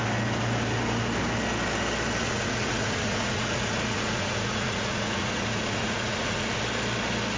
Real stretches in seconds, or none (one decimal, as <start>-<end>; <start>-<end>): 0.0-2.2; 6.6-7.4